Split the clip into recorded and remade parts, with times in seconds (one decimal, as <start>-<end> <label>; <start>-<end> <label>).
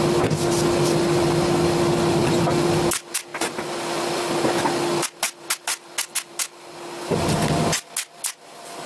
0.0-8.9 recorded